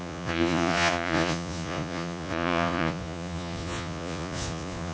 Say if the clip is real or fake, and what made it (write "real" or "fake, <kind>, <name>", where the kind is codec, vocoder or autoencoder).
fake, vocoder, Vocos